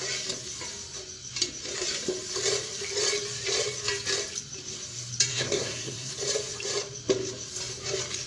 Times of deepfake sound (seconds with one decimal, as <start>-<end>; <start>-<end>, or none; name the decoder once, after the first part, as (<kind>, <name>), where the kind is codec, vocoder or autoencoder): 5.3-6.1 (codec, SNAC)